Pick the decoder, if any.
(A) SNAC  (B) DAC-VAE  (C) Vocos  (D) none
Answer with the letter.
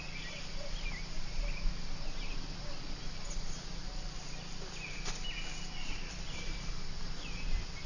D